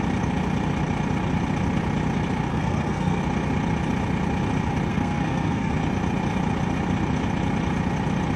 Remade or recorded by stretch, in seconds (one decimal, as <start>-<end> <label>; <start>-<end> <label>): 0.0-2.5 recorded; 2.5-3.2 remade; 3.2-4.9 recorded; 4.9-5.7 remade; 5.7-8.4 recorded